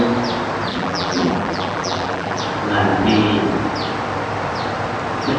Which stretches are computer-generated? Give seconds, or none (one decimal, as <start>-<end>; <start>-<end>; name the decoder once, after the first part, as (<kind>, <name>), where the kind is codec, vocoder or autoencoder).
0.7-2.4 (vocoder, BigVGAN v2)